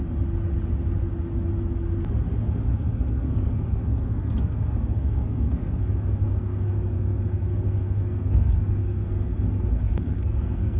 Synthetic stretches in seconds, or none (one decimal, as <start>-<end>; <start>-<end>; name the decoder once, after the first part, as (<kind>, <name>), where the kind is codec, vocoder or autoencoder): 2.7-10.8 (codec, SNAC)